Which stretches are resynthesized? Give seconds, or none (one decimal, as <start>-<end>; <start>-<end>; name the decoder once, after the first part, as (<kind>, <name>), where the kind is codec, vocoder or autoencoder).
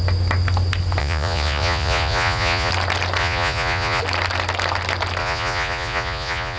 1.0-2.7 (vocoder, Vocos); 3.2-4.0; 5.2-6.6